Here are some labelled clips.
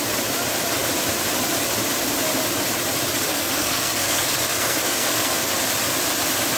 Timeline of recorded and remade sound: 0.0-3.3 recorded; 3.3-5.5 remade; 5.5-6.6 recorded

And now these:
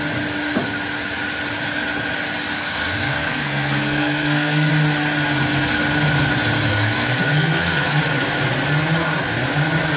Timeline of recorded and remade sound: 0.0-2.6 recorded; 2.6-4.7 remade; 4.7-6.7 recorded; 6.7-8.0 remade; 8.0-10.0 recorded

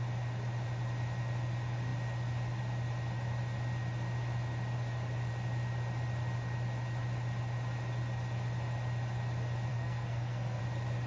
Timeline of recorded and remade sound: 0.0-9.7 recorded; 9.7-10.6 remade; 10.6-11.1 recorded

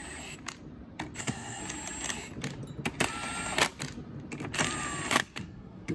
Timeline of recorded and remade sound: 0.0-1.2 recorded; 1.2-1.6 remade; 1.6-5.1 recorded; 5.1-5.9 remade

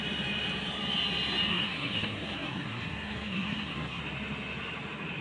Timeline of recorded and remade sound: 0.0-1.5 recorded; 1.5-4.0 remade; 4.0-5.2 recorded